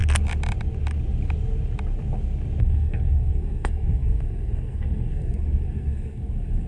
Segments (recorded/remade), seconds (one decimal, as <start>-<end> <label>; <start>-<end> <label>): 0.0-2.6 recorded; 2.6-6.7 remade